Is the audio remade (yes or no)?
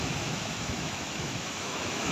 yes